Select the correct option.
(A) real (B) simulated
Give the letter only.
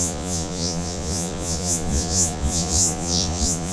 B